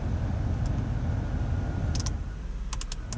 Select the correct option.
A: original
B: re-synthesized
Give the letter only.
A